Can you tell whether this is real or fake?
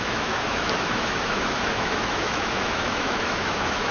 fake